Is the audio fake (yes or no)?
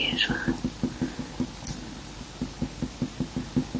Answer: no